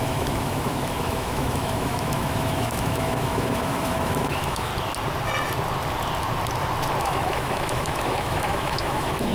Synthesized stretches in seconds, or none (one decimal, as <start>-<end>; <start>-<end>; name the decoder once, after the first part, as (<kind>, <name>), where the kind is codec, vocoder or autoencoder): 0.0-4.7 (autoencoder, DAC-VAE); 7.0-9.3